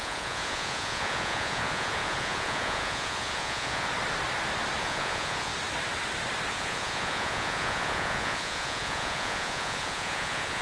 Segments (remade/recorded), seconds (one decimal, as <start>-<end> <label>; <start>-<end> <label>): 0.0-3.9 remade; 3.9-4.8 recorded; 4.8-5.5 remade; 5.5-6.5 recorded; 6.5-10.6 remade